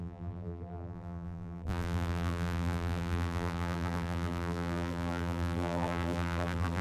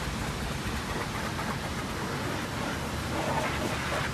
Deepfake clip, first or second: first